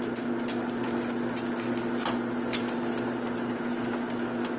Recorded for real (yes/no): yes